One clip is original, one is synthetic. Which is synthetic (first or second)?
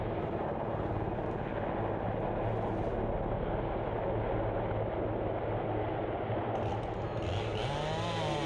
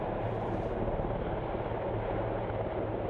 second